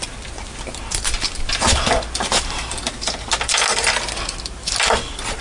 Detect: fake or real real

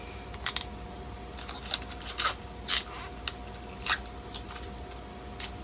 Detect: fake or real real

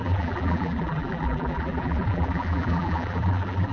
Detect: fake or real fake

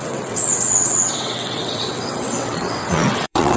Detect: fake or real fake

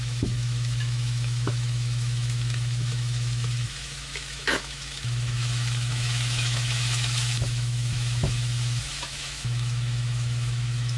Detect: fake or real fake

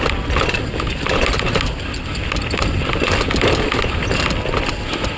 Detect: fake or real real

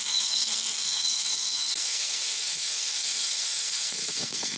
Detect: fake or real fake